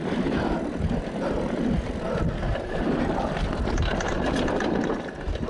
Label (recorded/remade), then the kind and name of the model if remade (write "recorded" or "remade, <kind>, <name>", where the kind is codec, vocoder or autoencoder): recorded